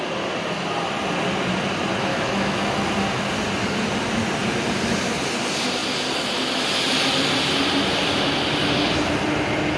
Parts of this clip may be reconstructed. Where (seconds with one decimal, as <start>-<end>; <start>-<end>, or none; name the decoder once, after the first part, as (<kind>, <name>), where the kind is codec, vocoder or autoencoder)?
2.1-2.7 (autoencoder, DAC-VAE)